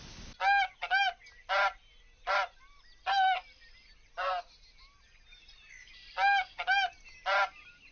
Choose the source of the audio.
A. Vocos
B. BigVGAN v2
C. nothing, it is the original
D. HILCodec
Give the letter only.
C